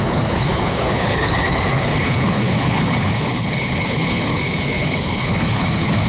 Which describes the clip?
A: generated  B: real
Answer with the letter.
A